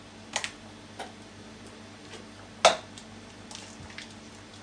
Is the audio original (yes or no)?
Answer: yes